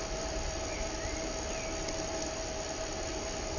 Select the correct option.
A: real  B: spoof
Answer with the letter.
A